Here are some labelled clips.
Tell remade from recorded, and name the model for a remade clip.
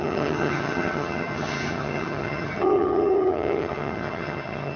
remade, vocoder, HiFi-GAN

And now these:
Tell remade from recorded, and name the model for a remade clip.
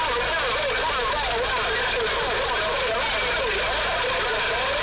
recorded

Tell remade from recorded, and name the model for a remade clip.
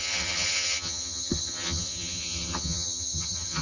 remade, vocoder, HiFi-GAN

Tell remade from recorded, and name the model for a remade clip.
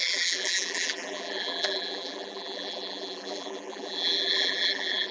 remade, vocoder, BigVGAN v2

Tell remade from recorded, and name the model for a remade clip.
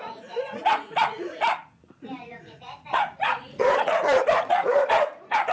remade, vocoder, Vocos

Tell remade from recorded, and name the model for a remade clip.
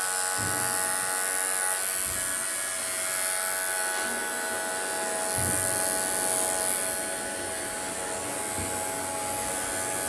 recorded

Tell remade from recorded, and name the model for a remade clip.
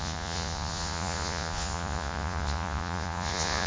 remade, vocoder, Vocos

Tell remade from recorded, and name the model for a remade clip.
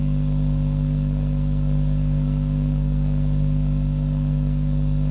remade, codec, SNAC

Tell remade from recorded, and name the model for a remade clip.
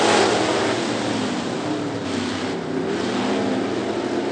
recorded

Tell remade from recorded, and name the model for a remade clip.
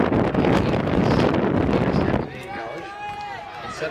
recorded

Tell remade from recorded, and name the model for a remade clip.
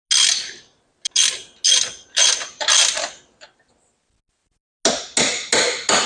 recorded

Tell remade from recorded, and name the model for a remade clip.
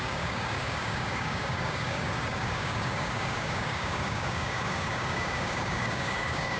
remade, codec, DAC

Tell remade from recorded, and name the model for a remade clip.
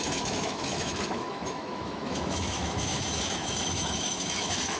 remade, autoencoder, DAC-VAE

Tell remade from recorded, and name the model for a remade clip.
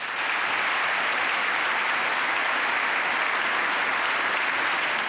recorded